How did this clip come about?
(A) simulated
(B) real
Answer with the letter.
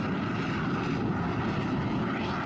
A